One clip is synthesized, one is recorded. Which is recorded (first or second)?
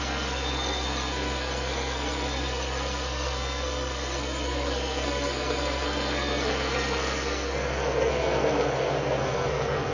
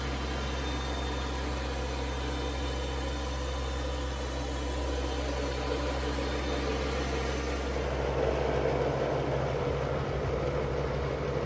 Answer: second